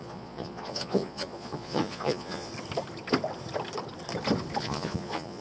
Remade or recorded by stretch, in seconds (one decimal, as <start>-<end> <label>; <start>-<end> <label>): 0.0-2.5 remade; 2.5-4.6 recorded; 4.6-5.4 remade